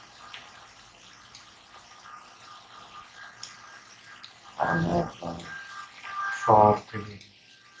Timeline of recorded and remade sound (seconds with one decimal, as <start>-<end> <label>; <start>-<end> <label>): 0.0-7.8 recorded